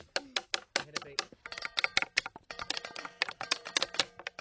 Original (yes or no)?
yes